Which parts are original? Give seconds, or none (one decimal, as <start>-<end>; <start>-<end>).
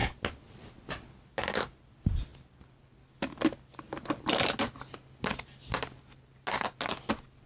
0.0-7.5